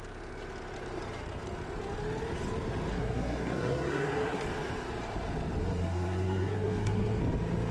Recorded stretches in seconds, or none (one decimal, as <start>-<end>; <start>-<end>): 0.0-2.9; 4.4-5.6; 7.2-7.7